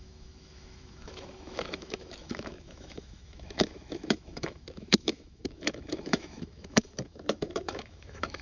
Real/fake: fake